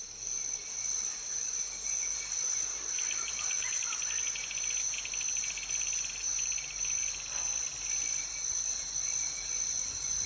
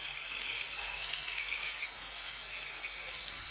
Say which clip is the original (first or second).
first